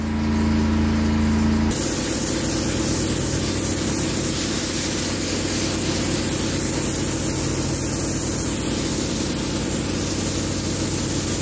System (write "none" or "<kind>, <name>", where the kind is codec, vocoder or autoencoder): none